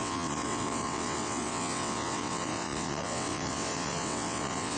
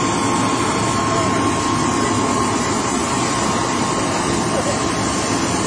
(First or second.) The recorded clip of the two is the second